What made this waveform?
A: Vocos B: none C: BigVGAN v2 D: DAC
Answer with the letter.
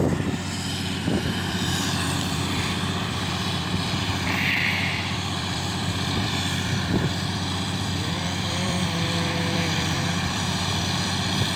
C